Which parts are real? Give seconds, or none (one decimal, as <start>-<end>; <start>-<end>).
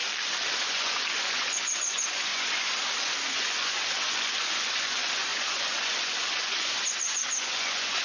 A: 0.0-0.6